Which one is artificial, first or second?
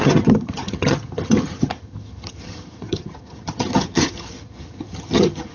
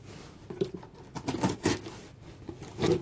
first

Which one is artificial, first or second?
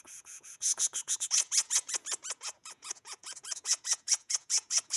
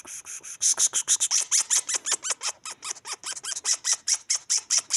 first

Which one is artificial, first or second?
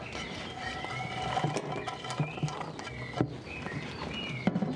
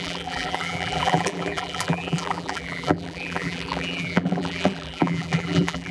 second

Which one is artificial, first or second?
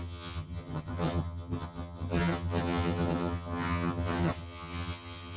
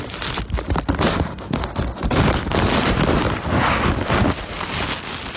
first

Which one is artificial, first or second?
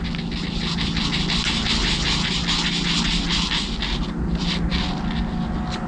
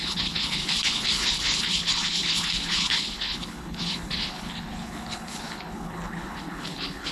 second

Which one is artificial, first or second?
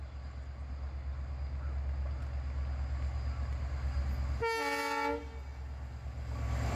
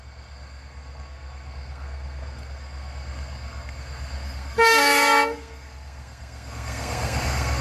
second